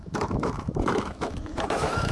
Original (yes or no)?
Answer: no